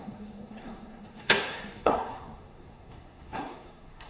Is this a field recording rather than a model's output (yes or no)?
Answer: no